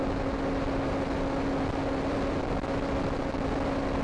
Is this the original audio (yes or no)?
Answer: yes